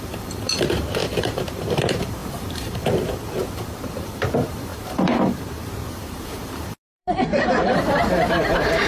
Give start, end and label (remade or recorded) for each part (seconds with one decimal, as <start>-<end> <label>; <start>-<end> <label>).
0.0-8.9 remade